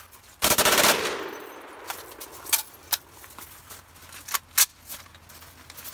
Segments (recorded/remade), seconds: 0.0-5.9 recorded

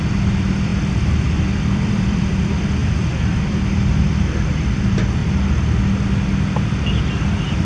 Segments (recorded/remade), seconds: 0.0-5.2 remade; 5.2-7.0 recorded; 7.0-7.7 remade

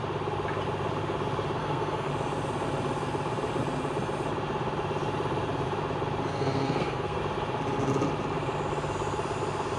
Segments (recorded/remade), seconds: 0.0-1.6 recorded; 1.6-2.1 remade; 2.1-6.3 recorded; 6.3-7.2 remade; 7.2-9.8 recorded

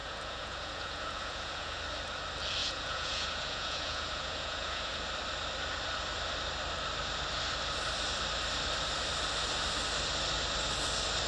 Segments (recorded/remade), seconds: 0.0-1.8 remade; 1.8-2.6 recorded; 2.6-4.9 remade; 4.9-11.3 recorded

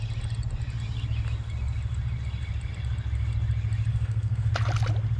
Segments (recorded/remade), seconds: 0.0-3.9 recorded; 3.9-4.5 remade; 4.5-5.2 recorded

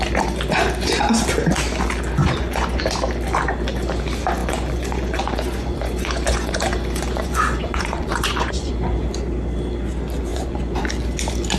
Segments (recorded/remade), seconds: 0.0-2.2 recorded; 2.2-2.8 remade; 2.8-4.4 recorded; 4.4-8.7 remade; 8.7-10.3 recorded; 10.3-10.8 remade; 10.8-11.6 recorded

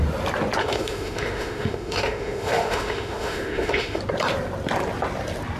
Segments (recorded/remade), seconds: 0.0-0.6 recorded; 0.6-4.0 remade; 4.0-5.6 recorded

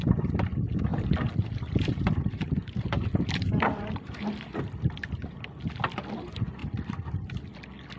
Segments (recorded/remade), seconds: 0.0-0.9 recorded; 0.9-5.4 remade; 5.4-8.0 recorded